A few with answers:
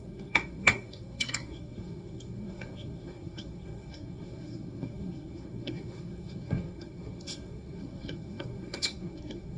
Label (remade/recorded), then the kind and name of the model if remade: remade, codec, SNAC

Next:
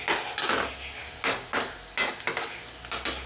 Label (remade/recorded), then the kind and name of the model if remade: recorded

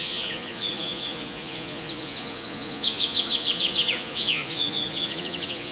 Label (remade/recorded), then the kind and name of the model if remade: remade, vocoder, Vocos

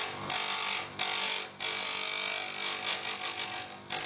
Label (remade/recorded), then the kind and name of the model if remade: recorded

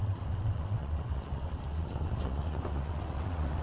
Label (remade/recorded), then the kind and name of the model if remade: remade, vocoder, WaveNeXt